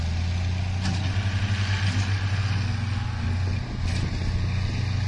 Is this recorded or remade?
recorded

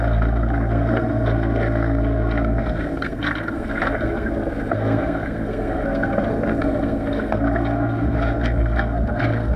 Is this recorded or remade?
remade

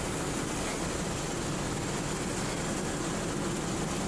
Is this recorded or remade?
recorded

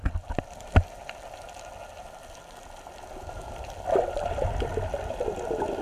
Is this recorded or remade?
recorded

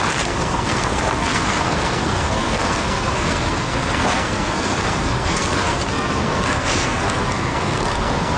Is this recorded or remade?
remade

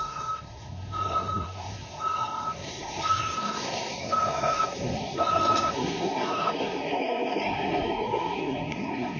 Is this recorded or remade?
remade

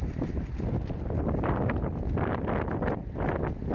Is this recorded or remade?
recorded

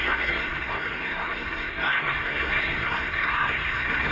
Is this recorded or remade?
remade